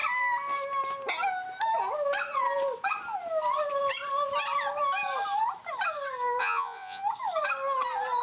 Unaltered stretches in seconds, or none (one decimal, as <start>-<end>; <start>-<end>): 0.0-6.4; 7.0-8.2